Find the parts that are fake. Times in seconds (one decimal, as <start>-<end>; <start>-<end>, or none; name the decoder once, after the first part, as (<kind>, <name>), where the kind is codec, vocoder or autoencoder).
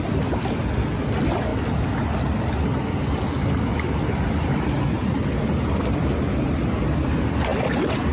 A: none